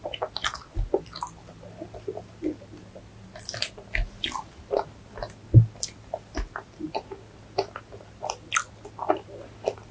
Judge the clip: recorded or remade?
recorded